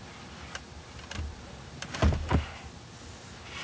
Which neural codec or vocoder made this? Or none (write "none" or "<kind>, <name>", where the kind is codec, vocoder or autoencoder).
none